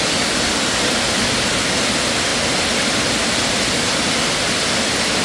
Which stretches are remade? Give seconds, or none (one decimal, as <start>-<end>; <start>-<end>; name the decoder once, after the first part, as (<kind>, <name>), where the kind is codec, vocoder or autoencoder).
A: none